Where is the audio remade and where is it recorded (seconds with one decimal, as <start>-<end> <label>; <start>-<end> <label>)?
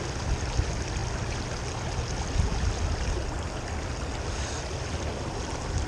0.0-5.9 recorded